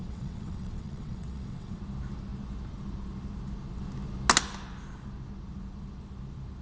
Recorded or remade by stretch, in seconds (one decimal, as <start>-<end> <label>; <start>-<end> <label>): 0.0-1.8 remade; 1.8-6.6 recorded